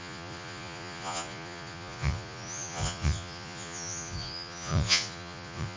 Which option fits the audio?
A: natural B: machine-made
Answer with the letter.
B